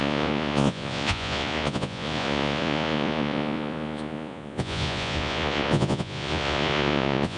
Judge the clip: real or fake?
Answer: fake